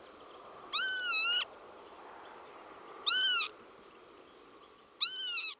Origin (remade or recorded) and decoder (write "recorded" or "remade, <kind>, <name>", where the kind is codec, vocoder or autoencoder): recorded